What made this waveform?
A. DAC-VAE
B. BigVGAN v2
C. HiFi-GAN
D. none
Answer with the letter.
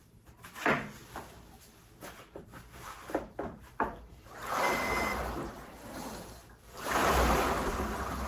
B